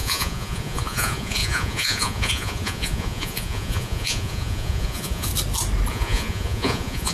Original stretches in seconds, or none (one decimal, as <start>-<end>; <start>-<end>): 5.3-5.9